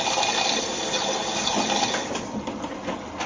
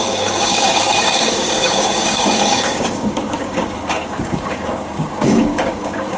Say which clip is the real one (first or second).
first